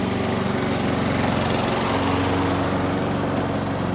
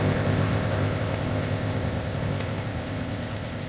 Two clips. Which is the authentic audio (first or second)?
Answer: first